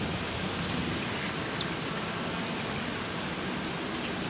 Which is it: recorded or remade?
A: recorded